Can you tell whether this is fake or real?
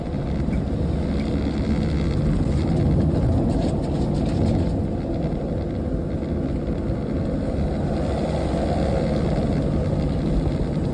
real